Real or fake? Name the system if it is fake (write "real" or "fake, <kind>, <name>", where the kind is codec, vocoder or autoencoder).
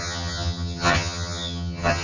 fake, vocoder, HiFi-GAN